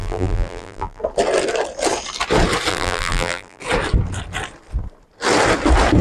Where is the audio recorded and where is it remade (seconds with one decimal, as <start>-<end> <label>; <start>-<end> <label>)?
0.0-1.0 remade; 1.0-2.7 recorded; 2.7-3.6 remade; 3.6-6.0 recorded